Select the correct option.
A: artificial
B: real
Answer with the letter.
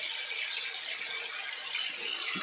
B